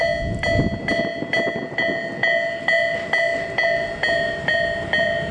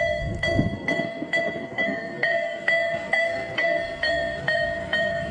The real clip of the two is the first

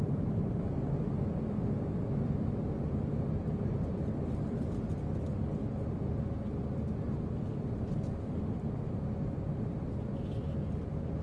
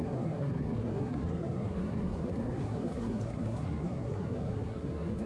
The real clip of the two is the first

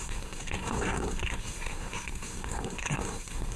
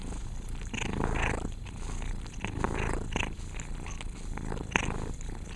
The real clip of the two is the second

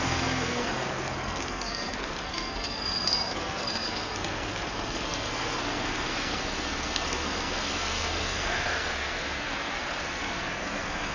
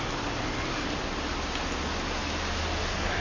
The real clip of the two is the second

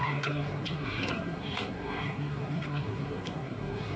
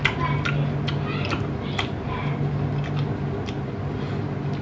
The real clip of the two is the second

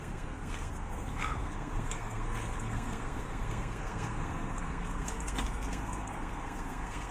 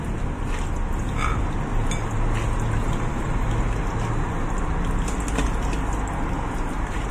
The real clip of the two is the second